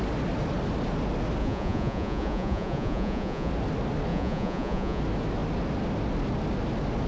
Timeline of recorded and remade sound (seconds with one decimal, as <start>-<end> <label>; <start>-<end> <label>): 0.0-1.4 recorded; 1.4-3.5 remade; 3.5-4.1 recorded; 4.1-5.0 remade; 5.0-7.1 recorded